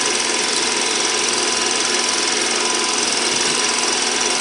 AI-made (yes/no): no